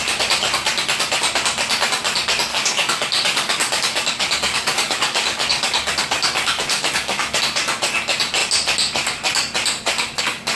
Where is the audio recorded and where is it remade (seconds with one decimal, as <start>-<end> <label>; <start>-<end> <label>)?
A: 0.0-2.5 recorded; 2.5-7.4 remade; 7.4-10.6 recorded